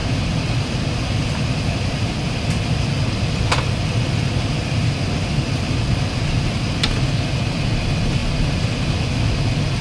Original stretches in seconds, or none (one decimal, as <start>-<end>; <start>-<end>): 0.0-9.8